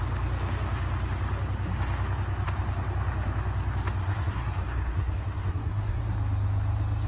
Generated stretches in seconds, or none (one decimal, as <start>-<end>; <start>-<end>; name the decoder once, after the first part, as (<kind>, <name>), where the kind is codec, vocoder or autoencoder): 4.0-6.0 (codec, SNAC)